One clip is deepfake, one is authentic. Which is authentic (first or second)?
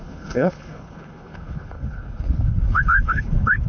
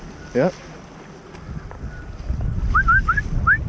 second